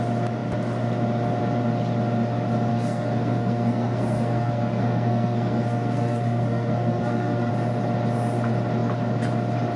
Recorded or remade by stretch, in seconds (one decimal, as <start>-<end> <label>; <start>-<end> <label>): 0.0-2.7 recorded; 2.7-7.5 remade; 7.5-9.8 recorded